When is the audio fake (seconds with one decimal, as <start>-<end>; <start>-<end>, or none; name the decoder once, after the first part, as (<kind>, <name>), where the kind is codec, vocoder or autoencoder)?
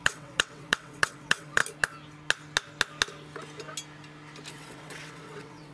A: 0.0-1.6 (vocoder, WaveNeXt); 4.5-5.7